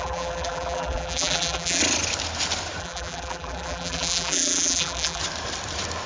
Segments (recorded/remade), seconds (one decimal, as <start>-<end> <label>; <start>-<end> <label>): 0.0-1.8 remade; 1.8-2.8 recorded; 2.8-5.2 remade; 5.2-6.1 recorded